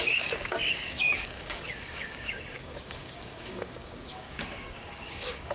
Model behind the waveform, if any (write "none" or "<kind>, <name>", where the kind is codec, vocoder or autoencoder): codec, DAC